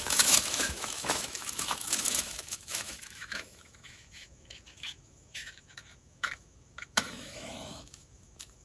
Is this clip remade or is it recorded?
remade